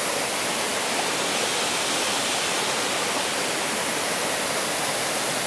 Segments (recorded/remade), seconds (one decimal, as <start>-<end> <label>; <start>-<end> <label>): 0.0-5.5 recorded